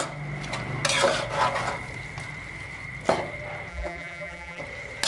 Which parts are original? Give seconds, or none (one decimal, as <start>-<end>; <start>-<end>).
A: 0.0-3.7; 4.6-5.1

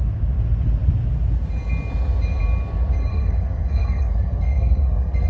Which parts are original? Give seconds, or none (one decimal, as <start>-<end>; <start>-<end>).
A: 0.0-3.1

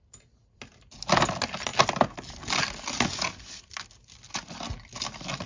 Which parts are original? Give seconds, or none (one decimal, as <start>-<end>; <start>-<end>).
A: 0.0-5.5

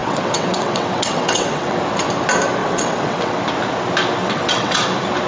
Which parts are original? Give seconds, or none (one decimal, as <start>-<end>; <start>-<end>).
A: 1.8-2.6; 3.4-4.2; 4.8-5.3

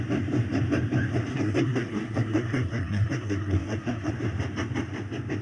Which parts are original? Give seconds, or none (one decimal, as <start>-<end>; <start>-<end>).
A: 0.0-1.3; 4.1-5.4